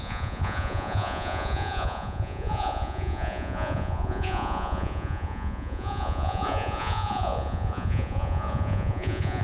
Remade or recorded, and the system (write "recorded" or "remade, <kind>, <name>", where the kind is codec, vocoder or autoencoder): remade, vocoder, Vocos